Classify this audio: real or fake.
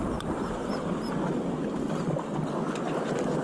real